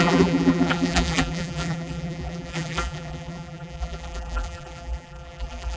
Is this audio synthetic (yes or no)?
yes